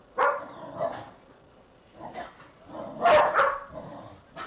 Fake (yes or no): no